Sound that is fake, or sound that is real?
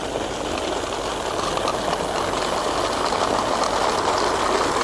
real